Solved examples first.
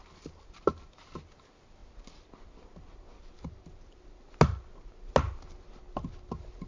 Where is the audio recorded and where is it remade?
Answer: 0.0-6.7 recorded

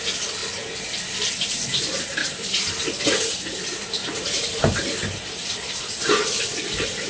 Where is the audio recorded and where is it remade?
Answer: 0.0-2.2 recorded; 2.2-2.7 remade; 2.7-4.0 recorded; 4.0-5.7 remade; 5.7-7.1 recorded

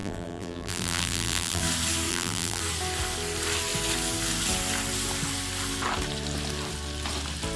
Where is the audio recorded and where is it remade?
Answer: 0.0-1.6 remade; 1.6-2.1 recorded; 2.1-2.6 remade; 2.6-7.6 recorded

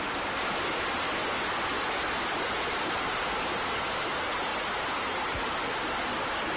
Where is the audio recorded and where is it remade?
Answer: 0.0-6.6 recorded

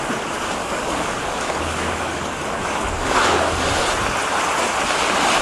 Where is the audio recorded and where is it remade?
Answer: 0.0-0.6 recorded; 0.6-3.8 remade; 3.8-5.4 recorded

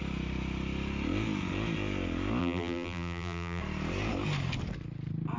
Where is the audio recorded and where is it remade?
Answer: 0.0-2.4 recorded; 2.4-3.6 remade; 3.6-5.4 recorded

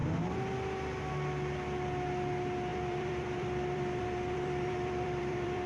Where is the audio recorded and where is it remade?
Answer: 0.0-2.7 recorded; 2.7-5.7 remade